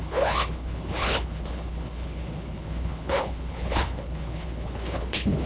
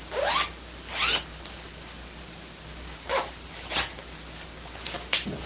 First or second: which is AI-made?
first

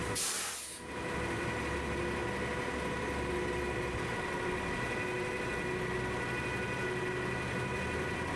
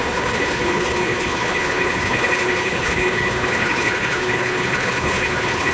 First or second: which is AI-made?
second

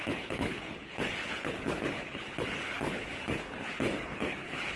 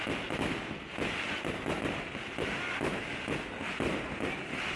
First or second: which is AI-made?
first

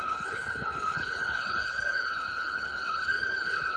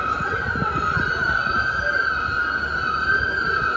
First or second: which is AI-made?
first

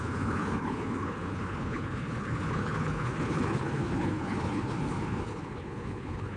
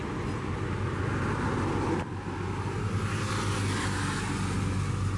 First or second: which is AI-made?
first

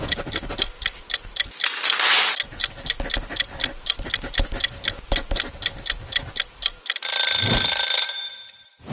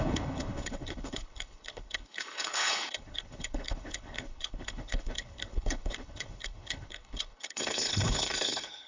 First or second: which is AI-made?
second